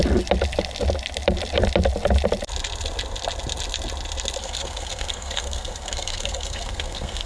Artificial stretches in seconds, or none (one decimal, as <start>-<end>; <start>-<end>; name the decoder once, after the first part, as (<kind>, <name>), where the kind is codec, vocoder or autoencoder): 4.4-7.3 (codec, SNAC)